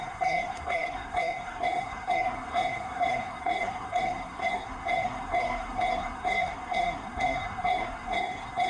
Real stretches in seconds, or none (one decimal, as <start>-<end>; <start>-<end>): none